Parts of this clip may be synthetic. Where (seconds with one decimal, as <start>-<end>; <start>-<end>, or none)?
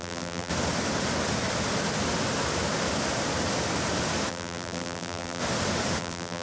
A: 0.0-0.5; 4.3-5.4; 6.0-6.4